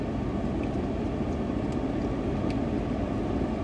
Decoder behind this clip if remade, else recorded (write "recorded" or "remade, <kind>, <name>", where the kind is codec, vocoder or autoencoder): recorded